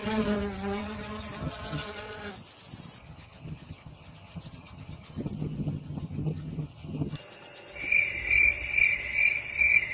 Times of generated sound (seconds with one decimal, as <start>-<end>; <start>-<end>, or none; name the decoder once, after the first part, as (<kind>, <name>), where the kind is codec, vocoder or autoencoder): 0.0-2.3 (vocoder, HiFi-GAN); 3.0-7.2